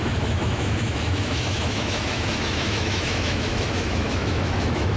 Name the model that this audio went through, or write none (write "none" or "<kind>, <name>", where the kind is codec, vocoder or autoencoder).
autoencoder, DAC-VAE